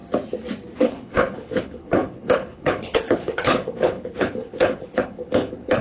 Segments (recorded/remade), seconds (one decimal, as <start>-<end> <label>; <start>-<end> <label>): 0.0-0.8 recorded; 0.8-5.8 remade